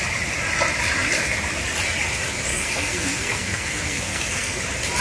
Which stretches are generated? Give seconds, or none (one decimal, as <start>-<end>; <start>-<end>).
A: 2.5-4.6